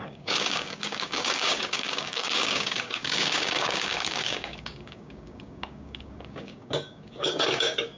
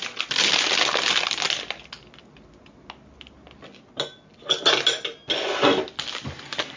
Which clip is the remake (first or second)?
first